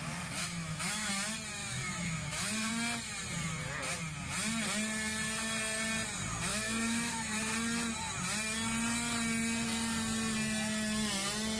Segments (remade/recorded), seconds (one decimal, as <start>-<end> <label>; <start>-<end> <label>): 0.0-0.4 recorded; 0.4-1.1 remade; 1.1-1.6 recorded; 1.6-2.7 remade; 2.7-6.5 recorded; 6.5-7.4 remade; 7.4-11.6 recorded